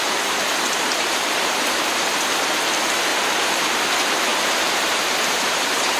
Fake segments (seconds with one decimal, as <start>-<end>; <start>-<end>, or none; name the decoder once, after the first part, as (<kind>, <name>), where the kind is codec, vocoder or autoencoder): 0.0-2.6 (vocoder, BigVGAN v2); 3.1-3.6; 4.3-6.0